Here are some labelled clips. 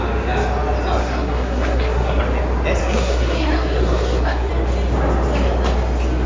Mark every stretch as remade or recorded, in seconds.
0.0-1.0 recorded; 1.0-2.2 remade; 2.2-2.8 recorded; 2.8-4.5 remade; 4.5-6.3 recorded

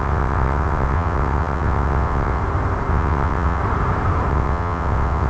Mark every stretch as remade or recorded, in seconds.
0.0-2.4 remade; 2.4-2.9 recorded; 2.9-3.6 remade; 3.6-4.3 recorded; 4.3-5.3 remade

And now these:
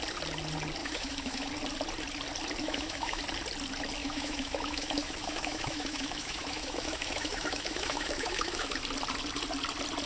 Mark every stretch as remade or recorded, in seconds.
0.0-0.8 recorded; 0.8-1.5 remade; 1.5-2.6 recorded; 2.6-3.2 remade; 3.2-4.0 recorded; 4.0-8.8 remade; 8.8-10.1 recorded

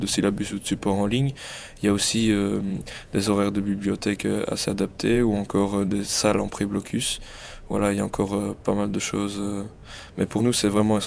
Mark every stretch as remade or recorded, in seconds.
0.0-11.1 remade

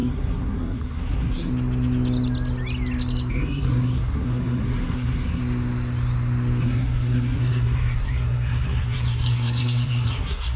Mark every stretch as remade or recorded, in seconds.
0.0-1.5 remade; 1.5-3.3 recorded; 3.3-5.4 remade; 5.4-6.6 recorded; 6.6-10.6 remade

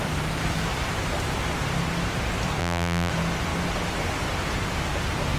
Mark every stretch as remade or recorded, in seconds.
0.0-2.6 recorded; 2.6-3.1 remade; 3.1-5.4 recorded

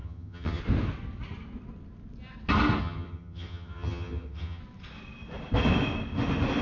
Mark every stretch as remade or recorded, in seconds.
0.0-0.6 remade; 0.6-2.8 recorded; 2.8-4.6 remade; 4.6-6.6 recorded

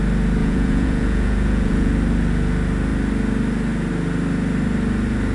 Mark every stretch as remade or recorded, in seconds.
0.0-0.4 recorded; 0.4-1.9 remade; 1.9-5.3 recorded